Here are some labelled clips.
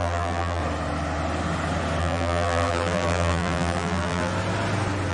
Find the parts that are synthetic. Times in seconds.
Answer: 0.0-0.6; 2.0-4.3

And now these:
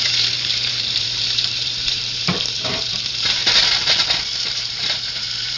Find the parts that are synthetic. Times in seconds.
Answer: 0.0-3.4; 4.5-5.6

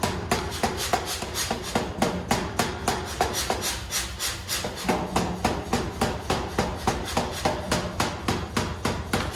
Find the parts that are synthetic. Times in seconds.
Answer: none

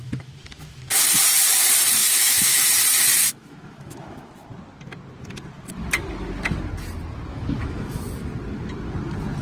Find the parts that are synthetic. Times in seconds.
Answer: 0.0-1.0; 2.0-2.7; 3.2-4.3; 7.3-8.0

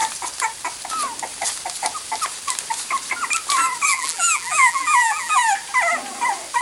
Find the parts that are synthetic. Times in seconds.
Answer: 3.9-5.4

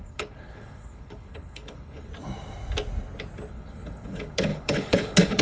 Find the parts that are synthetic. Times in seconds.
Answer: 0.0-2.1; 3.5-5.4

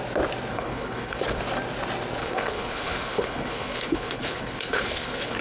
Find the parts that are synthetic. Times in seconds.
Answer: 0.5-1.2; 2.2-5.4

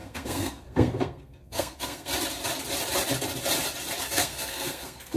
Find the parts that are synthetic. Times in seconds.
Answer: 0.0-2.1; 4.0-5.2